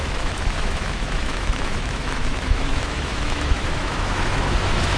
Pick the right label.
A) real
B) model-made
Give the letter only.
B